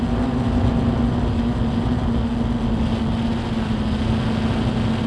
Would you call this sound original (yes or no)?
yes